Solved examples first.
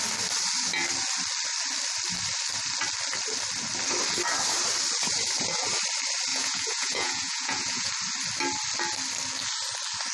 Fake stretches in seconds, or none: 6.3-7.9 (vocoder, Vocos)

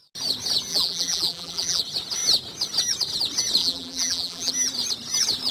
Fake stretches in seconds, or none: 0.7-1.8 (vocoder, BigVGAN v2); 3.6-4.5

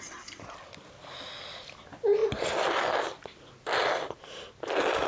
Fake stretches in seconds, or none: none

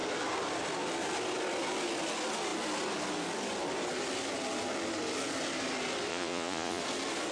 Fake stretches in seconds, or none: 6.1-6.8 (vocoder, Vocos)

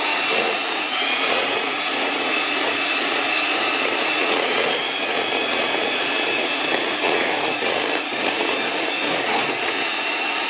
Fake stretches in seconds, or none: 0.0-10.5 (vocoder, Vocos)

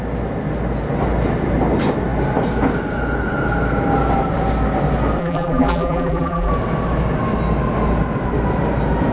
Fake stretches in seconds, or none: 5.2-6.5 (vocoder, BigVGAN v2)

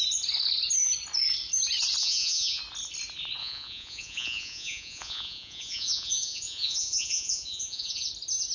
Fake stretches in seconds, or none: 2.0-2.6 (vocoder, Vocos); 3.4-8.1